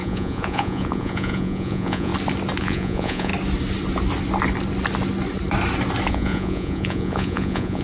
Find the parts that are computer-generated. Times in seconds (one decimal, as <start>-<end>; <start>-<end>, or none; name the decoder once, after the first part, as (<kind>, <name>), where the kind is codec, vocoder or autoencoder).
0.0-2.1 (vocoder, Vocos); 2.6-3.3; 6.1-7.8

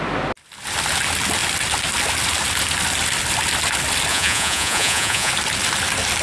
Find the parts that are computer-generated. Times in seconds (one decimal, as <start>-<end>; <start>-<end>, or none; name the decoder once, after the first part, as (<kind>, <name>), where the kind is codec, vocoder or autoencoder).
4.1-5.3 (vocoder, Vocos)

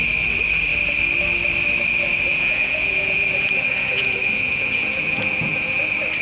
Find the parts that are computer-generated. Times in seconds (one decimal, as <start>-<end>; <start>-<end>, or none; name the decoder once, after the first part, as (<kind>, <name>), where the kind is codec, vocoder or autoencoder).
2.3-5.8 (vocoder, Vocos)

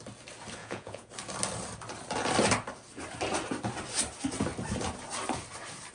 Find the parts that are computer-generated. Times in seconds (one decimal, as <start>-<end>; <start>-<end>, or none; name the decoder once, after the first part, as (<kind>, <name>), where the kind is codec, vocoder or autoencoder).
0.6-1.1 (vocoder, Vocos)

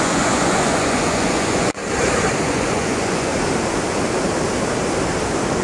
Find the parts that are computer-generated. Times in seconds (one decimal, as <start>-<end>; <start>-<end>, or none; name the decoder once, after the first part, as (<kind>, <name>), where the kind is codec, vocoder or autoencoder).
0.0-1.8 (vocoder, Vocos); 2.4-3.3

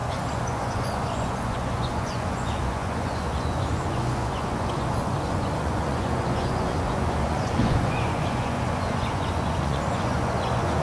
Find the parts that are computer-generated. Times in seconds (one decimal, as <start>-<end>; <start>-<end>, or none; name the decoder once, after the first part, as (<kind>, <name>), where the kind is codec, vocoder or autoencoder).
0.0-10.8 (vocoder, Vocos)

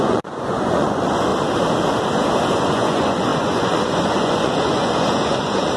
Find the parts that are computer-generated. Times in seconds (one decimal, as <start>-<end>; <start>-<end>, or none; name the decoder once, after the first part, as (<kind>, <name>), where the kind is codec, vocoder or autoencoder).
0.0-1.3 (vocoder, Vocos); 2.5-5.8